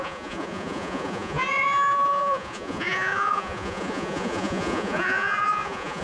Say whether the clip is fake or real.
fake